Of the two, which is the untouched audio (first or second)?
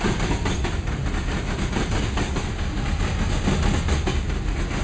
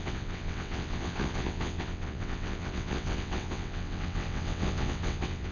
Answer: first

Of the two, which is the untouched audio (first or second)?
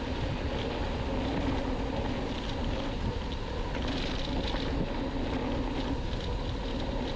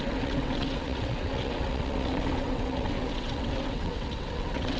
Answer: first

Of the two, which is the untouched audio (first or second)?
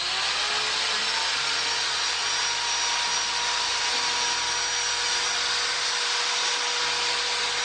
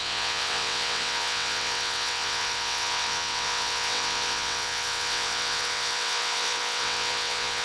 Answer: first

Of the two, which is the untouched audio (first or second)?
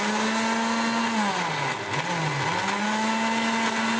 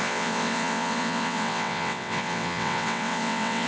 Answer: first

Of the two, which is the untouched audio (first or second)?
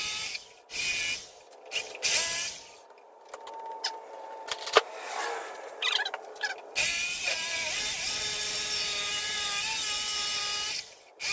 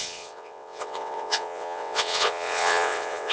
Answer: first